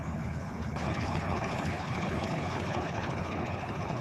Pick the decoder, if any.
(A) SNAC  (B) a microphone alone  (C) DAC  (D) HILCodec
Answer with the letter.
D